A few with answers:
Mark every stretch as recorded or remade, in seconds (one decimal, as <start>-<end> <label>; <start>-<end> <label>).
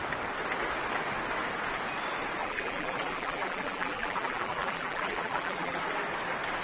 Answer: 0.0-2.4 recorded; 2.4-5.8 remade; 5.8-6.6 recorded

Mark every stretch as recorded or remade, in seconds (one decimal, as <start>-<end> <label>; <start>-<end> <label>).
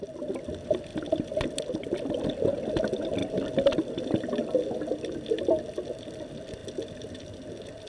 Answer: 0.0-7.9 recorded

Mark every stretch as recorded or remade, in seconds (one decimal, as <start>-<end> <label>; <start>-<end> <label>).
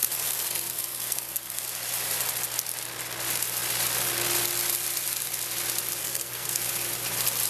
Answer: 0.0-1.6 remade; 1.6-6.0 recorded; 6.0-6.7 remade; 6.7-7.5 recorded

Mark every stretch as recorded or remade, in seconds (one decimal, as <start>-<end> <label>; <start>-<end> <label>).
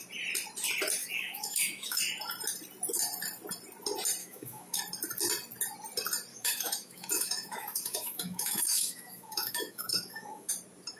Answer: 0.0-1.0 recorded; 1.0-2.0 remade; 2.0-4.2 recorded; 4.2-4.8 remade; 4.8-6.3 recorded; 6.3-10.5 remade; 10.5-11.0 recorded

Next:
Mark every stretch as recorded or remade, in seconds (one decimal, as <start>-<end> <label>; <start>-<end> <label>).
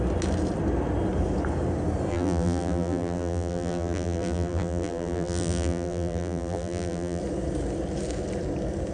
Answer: 0.0-2.1 recorded; 2.1-7.2 remade; 7.2-8.9 recorded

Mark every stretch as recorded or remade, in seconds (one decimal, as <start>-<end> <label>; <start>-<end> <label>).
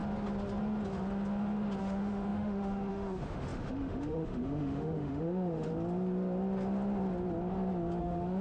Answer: 0.0-1.8 recorded; 1.8-5.7 remade; 5.7-8.0 recorded; 8.0-8.4 remade